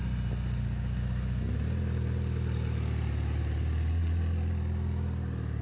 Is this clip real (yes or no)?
yes